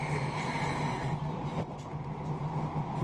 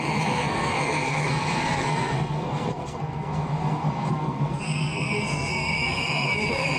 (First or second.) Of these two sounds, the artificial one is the second